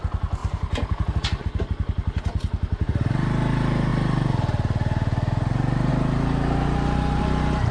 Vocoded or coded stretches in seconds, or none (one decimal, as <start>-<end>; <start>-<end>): 0.4-1.6